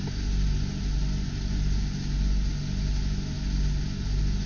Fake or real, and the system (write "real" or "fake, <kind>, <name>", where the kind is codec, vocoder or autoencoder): real